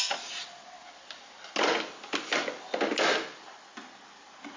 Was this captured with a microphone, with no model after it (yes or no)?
yes